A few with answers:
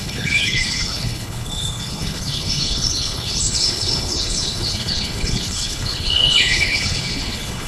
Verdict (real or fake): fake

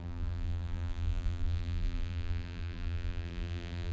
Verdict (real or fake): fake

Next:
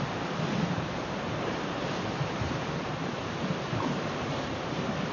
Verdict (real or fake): fake